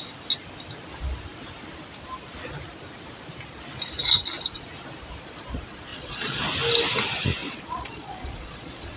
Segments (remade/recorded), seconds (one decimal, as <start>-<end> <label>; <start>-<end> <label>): 0.0-5.9 recorded; 5.9-6.4 remade; 6.4-7.4 recorded; 7.4-9.0 remade

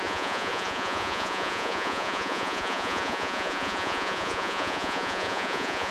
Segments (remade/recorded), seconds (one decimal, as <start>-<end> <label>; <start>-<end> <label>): 0.0-5.9 remade

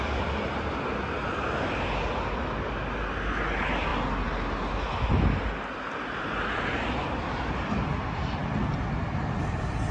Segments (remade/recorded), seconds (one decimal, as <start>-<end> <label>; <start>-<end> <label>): 0.0-9.9 recorded